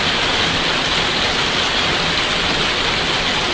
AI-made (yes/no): no